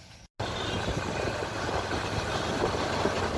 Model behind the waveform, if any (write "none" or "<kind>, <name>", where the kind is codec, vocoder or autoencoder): none